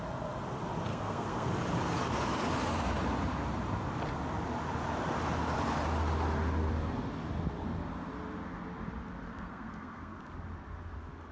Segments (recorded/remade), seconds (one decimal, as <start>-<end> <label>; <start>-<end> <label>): 0.0-0.9 recorded; 0.9-1.5 remade; 1.5-9.3 recorded; 9.3-10.2 remade; 10.2-11.3 recorded